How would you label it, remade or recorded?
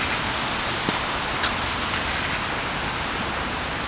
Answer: recorded